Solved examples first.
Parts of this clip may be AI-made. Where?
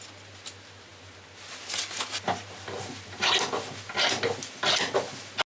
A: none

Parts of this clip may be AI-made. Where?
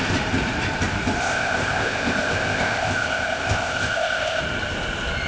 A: 1.2-4.4 (codec, ZipCodec)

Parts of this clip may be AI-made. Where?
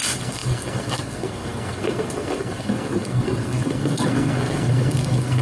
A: 0.0-5.4 (codec, SNAC)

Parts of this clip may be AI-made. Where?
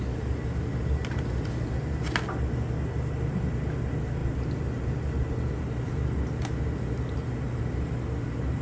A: none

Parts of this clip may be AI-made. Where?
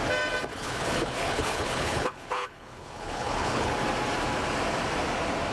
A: 0.5-3.7 (codec, HILCodec)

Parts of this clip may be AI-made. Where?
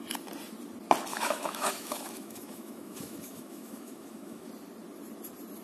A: 1.1-4.5 (autoencoder, DAC-VAE)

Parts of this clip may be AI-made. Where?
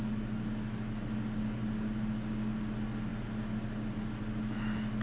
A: none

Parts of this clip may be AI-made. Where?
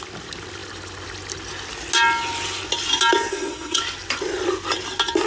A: 3.3-3.8 (codec, SNAC)